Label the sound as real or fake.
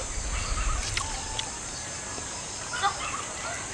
real